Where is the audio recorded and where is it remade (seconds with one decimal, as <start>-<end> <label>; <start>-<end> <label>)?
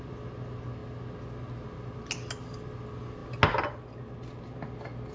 0.0-5.1 recorded